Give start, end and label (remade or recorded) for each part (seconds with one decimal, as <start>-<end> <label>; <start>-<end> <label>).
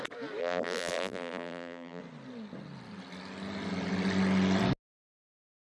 0.0-0.4 recorded; 0.4-2.0 remade; 2.0-5.7 recorded